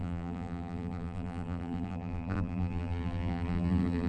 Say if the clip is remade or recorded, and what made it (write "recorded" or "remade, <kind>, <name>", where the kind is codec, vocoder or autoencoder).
remade, vocoder, BigVGAN v2